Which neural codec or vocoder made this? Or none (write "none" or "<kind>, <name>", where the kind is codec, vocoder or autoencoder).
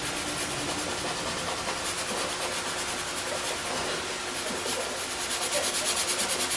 none